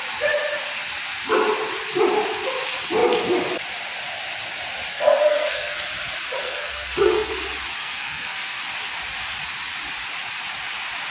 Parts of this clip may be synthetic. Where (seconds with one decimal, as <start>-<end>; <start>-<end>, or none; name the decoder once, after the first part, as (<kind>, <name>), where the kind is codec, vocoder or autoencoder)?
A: 4.9-5.9 (codec, SNAC); 6.4-7.3; 7.8-8.6